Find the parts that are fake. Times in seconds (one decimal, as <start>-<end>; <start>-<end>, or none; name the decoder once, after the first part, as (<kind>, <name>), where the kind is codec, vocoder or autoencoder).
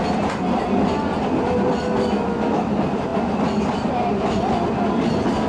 none